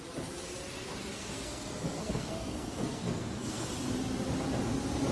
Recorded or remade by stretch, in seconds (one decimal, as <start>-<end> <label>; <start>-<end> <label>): 0.0-1.1 recorded; 1.1-3.7 remade; 3.7-5.1 recorded